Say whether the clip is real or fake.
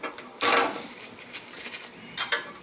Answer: real